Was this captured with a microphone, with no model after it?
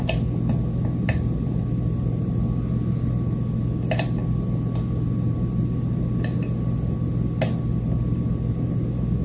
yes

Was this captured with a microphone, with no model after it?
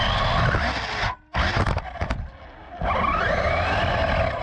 yes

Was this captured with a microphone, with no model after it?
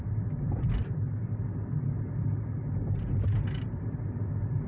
no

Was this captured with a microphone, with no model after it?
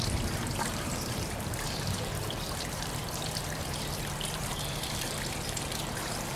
no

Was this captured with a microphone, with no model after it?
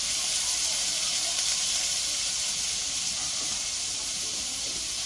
no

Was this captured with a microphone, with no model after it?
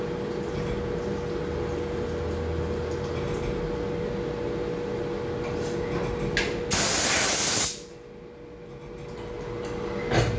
yes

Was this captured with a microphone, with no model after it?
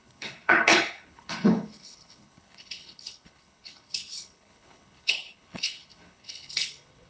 no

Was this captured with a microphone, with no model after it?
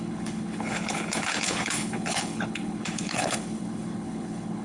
no